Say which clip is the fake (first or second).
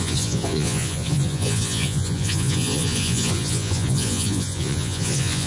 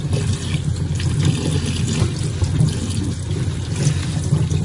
first